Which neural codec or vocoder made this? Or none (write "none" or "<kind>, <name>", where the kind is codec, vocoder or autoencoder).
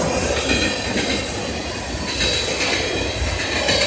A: none